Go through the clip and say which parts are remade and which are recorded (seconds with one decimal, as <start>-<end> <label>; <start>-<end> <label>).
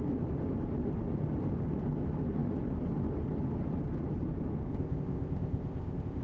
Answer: 0.0-4.7 recorded; 4.7-6.2 remade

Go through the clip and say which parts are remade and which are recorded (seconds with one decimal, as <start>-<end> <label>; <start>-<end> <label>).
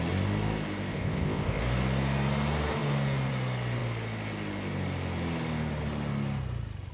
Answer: 0.0-0.9 recorded; 0.9-1.6 remade; 1.6-6.9 recorded